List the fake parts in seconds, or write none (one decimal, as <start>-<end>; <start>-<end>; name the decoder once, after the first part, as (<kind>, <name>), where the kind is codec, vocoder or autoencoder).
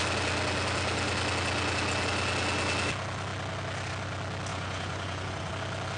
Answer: 4.5-5.5 (vocoder, Vocos)